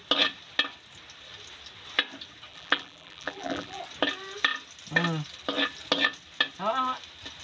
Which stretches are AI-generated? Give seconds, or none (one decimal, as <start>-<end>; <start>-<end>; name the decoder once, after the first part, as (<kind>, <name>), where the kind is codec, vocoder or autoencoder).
2.5-3.8 (vocoder, BigVGAN v2)